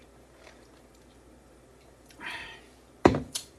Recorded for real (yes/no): no